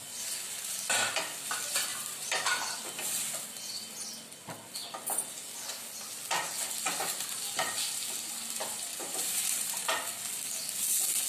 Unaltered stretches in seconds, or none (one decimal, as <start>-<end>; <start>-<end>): 0.0-1.9; 2.6-8.9; 9.8-11.3